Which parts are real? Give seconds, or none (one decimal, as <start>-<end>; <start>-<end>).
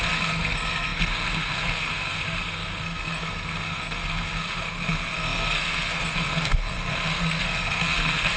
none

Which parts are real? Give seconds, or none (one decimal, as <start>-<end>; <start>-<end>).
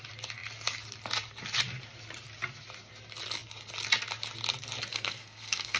0.0-4.9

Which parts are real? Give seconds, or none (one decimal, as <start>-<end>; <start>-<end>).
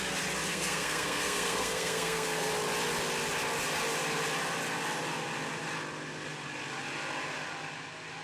0.0-0.5; 2.5-8.2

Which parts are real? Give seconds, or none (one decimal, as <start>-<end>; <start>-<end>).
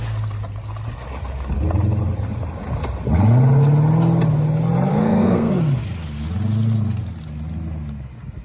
0.0-4.9; 5.5-8.4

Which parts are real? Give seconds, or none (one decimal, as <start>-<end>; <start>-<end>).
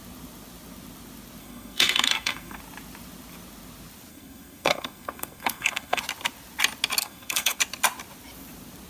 0.0-1.4; 2.6-4.1; 6.0-7.0; 7.6-8.9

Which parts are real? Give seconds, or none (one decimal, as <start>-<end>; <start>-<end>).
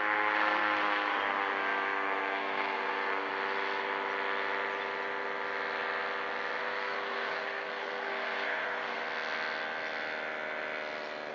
3.3-6.6; 9.0-11.3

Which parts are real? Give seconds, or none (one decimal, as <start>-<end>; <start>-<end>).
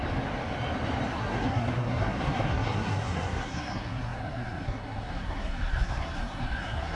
0.0-1.1